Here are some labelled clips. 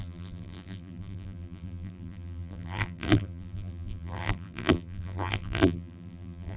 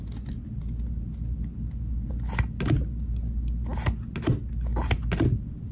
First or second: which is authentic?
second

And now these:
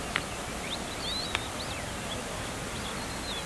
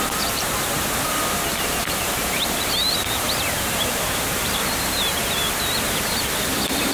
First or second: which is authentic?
first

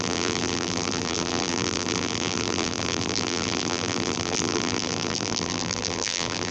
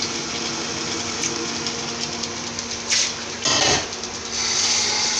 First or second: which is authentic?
second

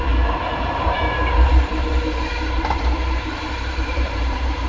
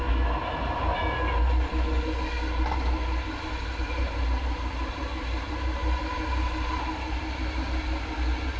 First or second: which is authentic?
second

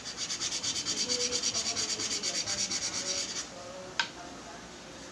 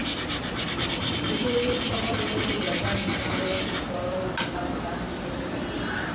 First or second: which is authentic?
first